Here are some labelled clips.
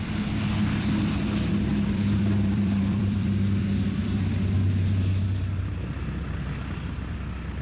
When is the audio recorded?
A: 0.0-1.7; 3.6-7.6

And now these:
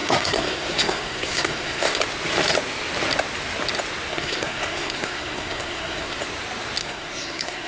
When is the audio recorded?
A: 2.0-4.1; 6.2-6.8

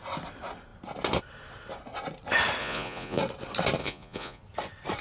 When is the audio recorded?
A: 0.0-2.6; 3.2-3.8; 4.4-5.0

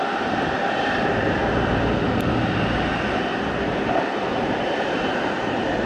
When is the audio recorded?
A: 1.4-3.7